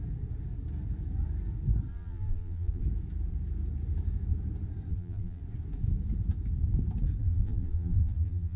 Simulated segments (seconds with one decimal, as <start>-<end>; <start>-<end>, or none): 1.9-2.8; 4.9-5.4; 7.2-8.6

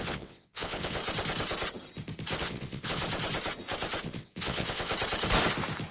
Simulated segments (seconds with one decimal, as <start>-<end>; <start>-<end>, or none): 0.0-1.0; 2.4-3.0; 4.0-4.9

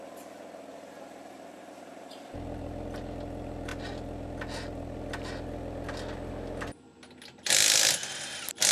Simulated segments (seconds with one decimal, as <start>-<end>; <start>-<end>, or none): 0.7-2.3

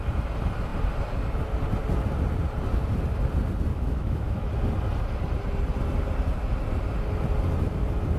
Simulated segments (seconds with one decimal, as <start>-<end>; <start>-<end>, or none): 3.7-4.5

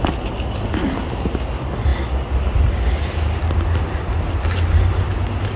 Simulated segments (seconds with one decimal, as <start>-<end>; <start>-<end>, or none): none

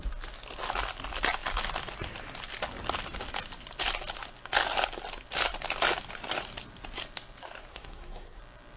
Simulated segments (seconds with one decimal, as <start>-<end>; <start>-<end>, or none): 7.7-8.4

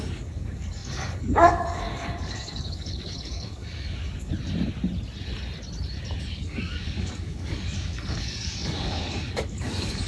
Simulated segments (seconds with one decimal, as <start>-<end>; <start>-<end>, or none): 0.0-4.3; 6.2-10.1

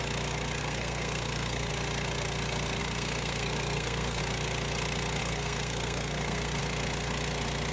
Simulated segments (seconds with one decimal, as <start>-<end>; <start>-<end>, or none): 0.6-1.7; 2.8-4.2; 5.2-6.6